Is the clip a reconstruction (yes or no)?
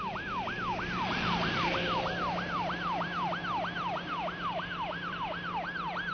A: no